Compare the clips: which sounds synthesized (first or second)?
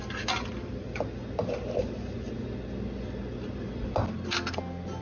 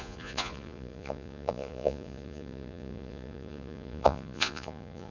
second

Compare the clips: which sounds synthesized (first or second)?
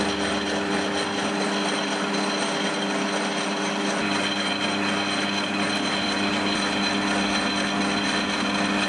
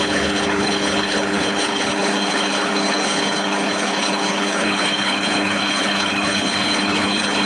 second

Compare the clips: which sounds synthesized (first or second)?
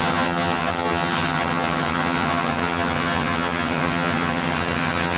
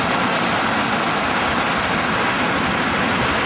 first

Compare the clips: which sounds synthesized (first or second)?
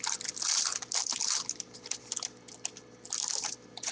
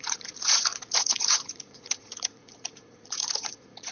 second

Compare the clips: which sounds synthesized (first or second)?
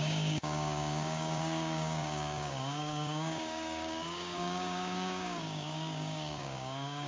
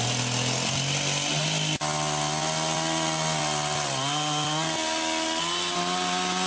first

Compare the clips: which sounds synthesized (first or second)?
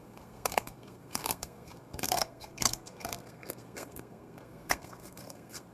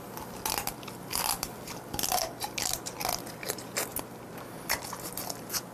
first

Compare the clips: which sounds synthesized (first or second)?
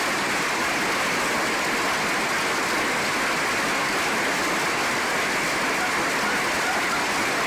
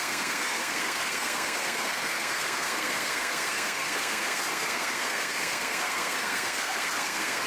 second